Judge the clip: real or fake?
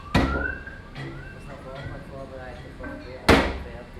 real